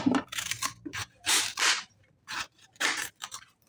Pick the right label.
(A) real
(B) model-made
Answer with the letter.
B